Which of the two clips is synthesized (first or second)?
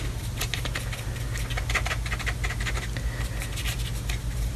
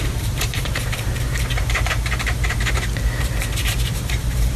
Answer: second